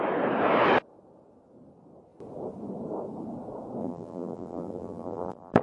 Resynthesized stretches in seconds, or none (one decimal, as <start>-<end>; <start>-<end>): 3.8-5.6